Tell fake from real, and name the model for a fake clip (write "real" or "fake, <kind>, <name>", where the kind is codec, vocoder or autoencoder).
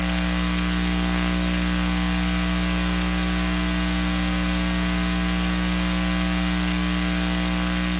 real